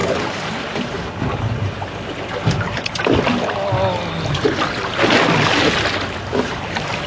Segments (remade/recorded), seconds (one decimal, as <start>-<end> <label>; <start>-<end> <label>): 0.0-7.1 recorded

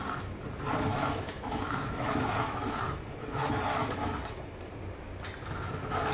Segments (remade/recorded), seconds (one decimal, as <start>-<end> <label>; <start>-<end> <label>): 0.0-0.9 recorded; 0.9-4.6 remade; 4.6-6.1 recorded

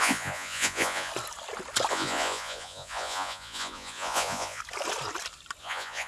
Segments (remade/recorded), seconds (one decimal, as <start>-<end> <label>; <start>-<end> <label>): 0.0-1.1 remade; 1.1-1.9 recorded; 1.9-4.6 remade; 4.6-5.6 recorded; 5.6-6.1 remade

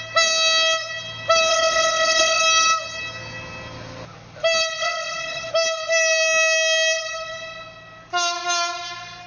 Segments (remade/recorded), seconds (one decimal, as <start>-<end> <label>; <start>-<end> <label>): 0.0-1.5 recorded; 1.5-2.4 remade; 2.4-4.8 recorded; 4.8-5.5 remade; 5.5-9.3 recorded

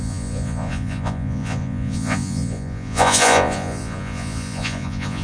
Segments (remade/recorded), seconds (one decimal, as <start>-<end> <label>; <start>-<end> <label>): 0.0-5.2 remade